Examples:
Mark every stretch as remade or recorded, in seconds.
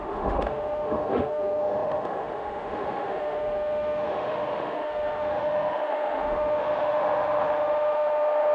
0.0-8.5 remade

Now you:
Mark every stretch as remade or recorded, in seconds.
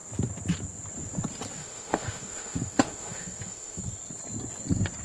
0.0-1.6 recorded; 1.6-3.8 remade; 3.8-5.0 recorded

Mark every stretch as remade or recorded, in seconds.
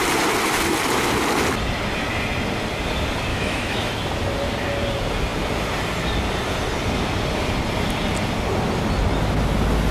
0.0-3.3 recorded; 3.3-3.9 remade; 3.9-9.9 recorded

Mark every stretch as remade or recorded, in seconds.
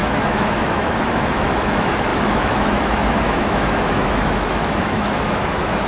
0.0-5.9 remade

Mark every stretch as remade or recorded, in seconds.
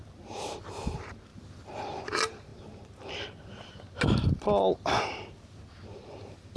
0.0-6.6 recorded